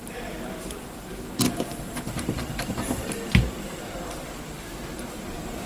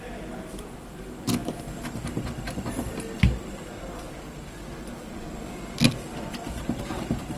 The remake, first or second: first